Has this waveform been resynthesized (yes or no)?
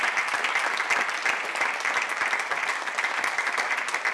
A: no